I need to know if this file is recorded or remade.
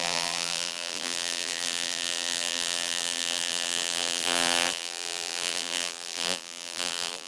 remade